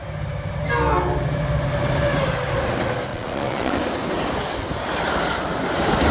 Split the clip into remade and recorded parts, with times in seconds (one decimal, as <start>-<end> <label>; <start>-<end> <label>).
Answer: 0.0-3.1 recorded; 3.1-3.8 remade; 3.8-6.1 recorded